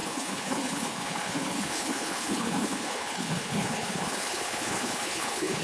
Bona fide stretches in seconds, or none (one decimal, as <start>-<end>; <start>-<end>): none